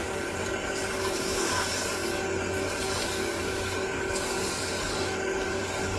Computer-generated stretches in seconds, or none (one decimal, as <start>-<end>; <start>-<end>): 0.0-6.0